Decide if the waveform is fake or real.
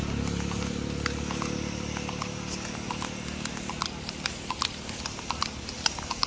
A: real